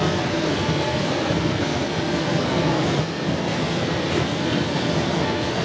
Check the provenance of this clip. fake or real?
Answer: fake